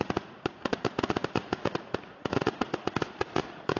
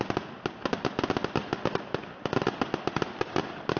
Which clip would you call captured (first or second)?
second